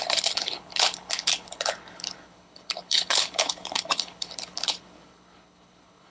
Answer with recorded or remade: remade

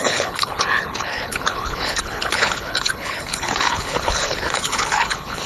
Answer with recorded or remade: remade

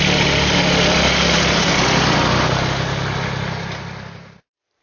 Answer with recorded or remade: recorded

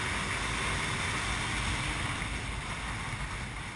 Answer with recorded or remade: recorded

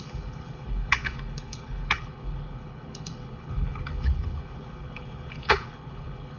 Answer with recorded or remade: remade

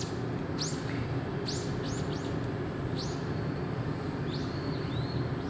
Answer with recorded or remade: recorded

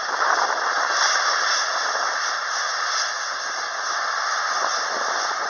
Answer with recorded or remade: recorded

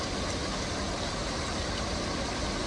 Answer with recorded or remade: recorded